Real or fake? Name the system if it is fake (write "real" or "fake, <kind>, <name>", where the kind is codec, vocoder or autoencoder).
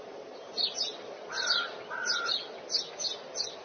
real